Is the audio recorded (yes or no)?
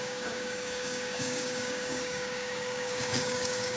no